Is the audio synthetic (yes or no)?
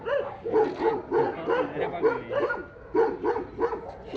no